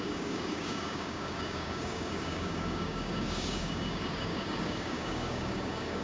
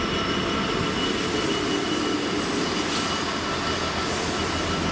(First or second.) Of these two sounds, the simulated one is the first